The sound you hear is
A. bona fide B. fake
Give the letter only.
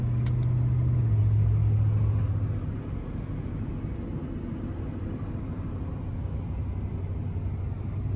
A